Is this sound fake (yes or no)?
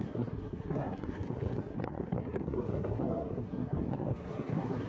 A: yes